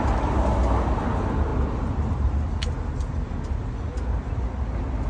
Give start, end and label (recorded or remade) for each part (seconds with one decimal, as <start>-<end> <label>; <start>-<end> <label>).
0.0-5.1 recorded